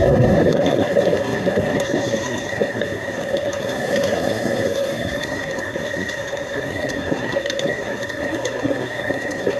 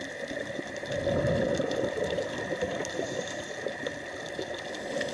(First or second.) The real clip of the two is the second